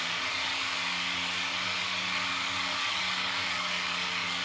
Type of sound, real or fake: fake